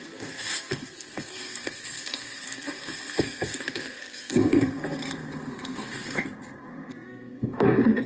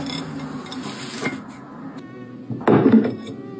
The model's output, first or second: first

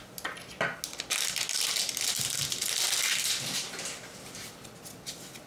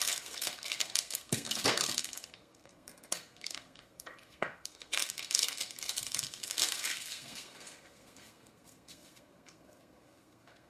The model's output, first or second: second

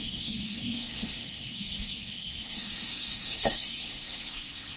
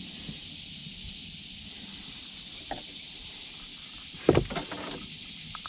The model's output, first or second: first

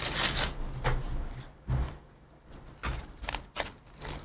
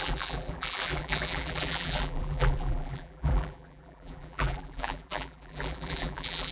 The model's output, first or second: second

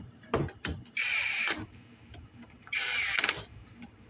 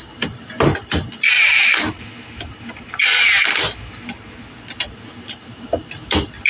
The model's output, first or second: first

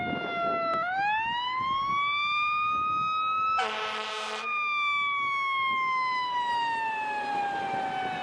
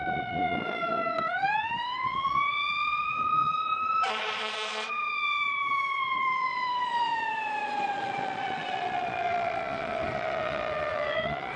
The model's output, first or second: second